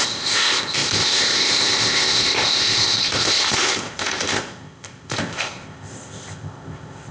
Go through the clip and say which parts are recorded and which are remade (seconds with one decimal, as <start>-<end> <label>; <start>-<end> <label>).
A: 0.0-7.1 remade